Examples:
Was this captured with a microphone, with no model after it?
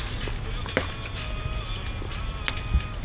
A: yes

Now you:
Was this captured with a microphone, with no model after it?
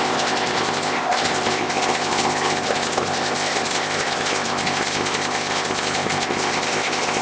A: no